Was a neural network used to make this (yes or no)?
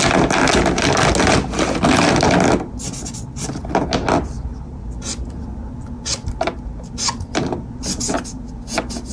no